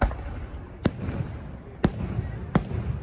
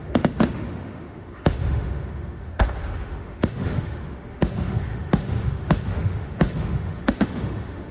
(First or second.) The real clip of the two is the first